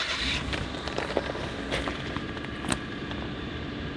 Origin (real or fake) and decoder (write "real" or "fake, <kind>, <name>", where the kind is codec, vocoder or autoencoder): real